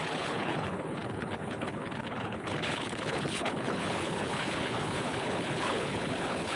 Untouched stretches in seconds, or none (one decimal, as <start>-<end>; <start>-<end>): none